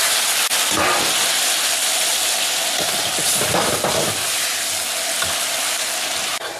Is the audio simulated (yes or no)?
no